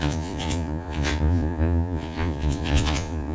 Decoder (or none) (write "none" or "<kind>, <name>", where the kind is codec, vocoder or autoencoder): vocoder, Vocos